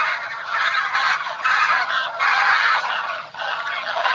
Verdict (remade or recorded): remade